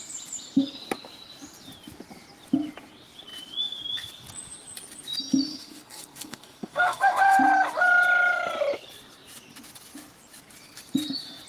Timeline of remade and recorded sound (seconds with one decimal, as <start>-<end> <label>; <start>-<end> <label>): 0.0-5.5 recorded; 5.5-7.4 remade; 7.4-11.5 recorded